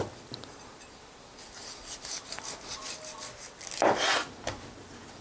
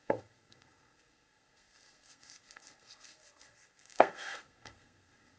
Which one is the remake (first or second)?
second